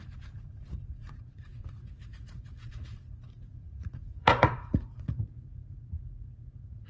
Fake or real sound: fake